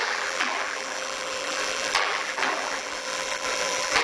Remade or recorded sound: remade